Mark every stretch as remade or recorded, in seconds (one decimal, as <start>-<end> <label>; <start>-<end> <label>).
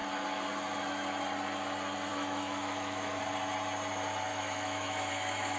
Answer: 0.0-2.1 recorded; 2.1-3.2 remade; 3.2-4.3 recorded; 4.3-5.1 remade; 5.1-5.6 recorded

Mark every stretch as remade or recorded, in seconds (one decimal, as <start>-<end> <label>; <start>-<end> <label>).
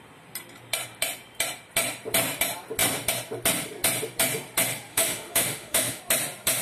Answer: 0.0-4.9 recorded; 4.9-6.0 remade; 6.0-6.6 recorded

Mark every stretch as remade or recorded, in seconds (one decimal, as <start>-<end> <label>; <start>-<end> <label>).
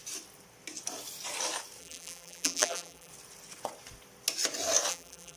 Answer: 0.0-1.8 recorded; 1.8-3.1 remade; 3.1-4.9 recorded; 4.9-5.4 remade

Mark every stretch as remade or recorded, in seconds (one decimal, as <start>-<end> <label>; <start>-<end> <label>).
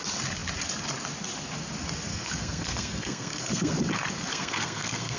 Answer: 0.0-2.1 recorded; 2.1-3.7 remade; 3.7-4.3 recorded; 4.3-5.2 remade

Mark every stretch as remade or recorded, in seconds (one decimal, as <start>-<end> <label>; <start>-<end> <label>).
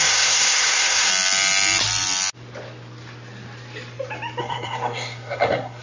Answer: 0.0-1.1 remade; 1.1-4.4 recorded; 4.4-5.8 remade